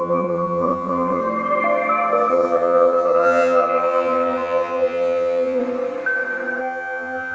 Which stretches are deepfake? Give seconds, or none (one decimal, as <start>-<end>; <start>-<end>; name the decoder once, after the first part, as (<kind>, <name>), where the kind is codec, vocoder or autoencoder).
0.0-1.2 (vocoder, HiFi-GAN); 2.3-5.6; 6.6-7.3